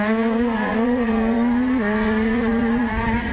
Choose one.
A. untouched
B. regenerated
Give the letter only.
B